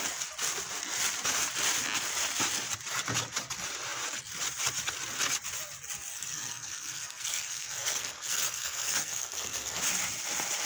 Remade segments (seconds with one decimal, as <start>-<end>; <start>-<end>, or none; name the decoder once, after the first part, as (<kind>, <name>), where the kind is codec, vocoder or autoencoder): 6.1-9.8 (codec, SNAC)